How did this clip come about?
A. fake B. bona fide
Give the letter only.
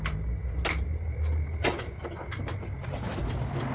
B